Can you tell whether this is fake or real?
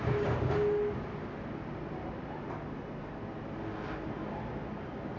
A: real